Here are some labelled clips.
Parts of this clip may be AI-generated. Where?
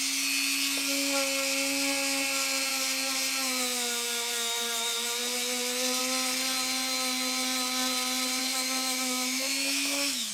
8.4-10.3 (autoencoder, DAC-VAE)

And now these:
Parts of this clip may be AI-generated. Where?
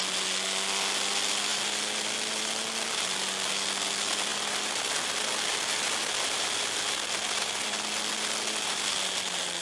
none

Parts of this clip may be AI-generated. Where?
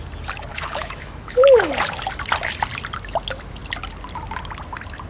0.5-1.7 (autoencoder, DAC-VAE)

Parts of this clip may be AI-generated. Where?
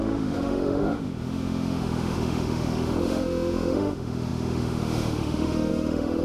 0.0-6.2 (autoencoder, DAC-VAE)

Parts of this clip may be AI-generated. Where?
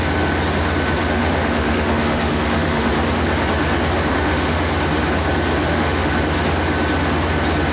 1.0-2.9 (autoencoder, DAC-VAE); 4.1-4.7; 5.7-6.2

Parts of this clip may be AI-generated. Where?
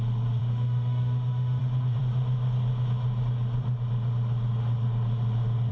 0.4-1.6 (autoencoder, DAC-VAE)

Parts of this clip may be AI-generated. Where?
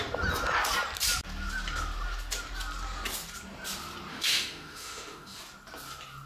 4.1-5.4 (autoencoder, DAC-VAE)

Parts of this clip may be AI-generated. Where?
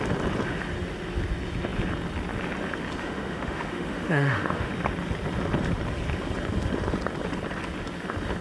3.0-4.7 (autoencoder, DAC-VAE)